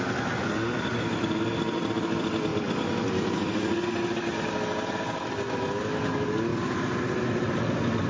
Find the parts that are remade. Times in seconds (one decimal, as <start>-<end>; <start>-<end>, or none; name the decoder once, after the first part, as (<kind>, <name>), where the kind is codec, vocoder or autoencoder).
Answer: none